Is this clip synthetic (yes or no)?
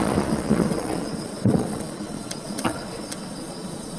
yes